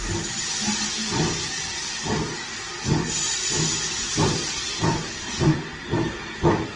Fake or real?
real